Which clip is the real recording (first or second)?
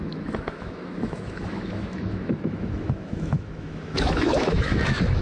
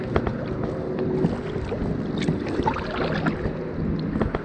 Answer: second